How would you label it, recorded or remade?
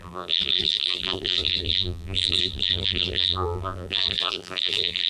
remade